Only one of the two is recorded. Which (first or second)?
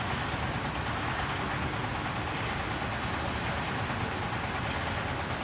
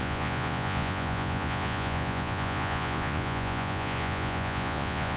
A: first